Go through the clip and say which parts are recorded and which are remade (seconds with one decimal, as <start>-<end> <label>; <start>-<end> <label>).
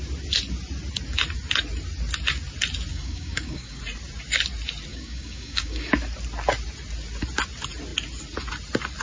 0.0-2.9 recorded; 2.9-3.8 remade; 3.8-4.9 recorded; 4.9-5.9 remade; 5.9-9.0 recorded